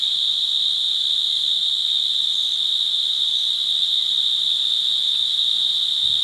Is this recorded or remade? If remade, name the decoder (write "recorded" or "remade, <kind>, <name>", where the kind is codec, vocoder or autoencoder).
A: recorded